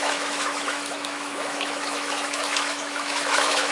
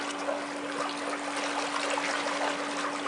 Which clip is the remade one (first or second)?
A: first